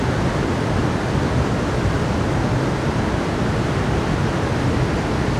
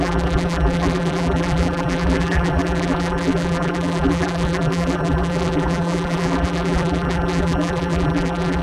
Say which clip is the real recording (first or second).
first